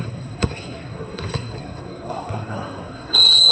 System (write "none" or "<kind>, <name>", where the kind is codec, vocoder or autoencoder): codec, SNAC